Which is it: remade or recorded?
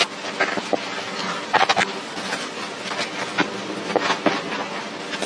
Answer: recorded